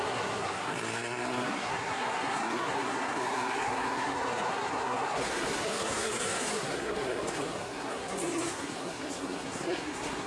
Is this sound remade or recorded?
remade